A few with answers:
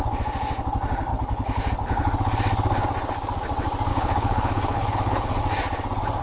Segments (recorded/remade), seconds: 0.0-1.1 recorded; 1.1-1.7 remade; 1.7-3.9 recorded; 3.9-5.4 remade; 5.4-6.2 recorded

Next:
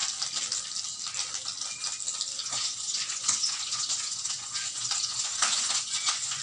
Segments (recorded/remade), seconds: 0.0-2.4 recorded; 2.4-6.4 remade

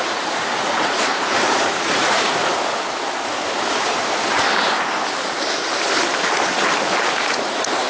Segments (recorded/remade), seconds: 0.0-2.4 remade; 2.4-7.1 recorded; 7.1-7.9 remade

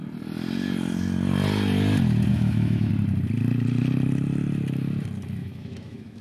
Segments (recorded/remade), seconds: 0.0-2.3 recorded; 2.3-2.9 remade; 2.9-5.4 recorded; 5.4-6.2 remade